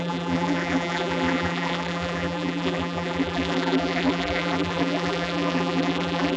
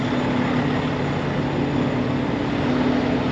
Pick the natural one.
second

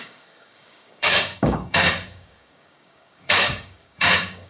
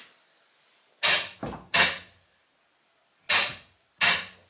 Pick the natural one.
second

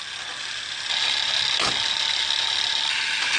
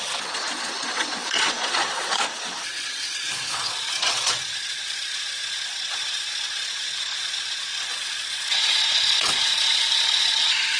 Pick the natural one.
first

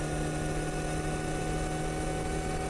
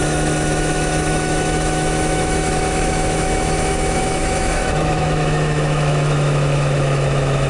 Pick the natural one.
first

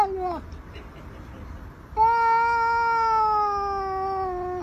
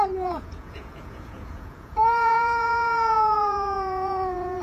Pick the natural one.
first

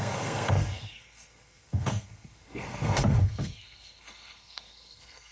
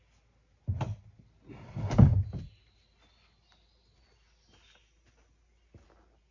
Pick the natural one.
second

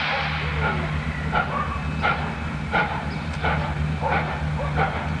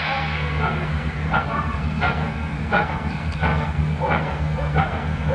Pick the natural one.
first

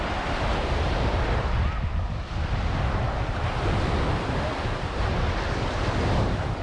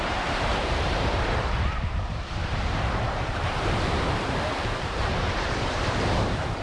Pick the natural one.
first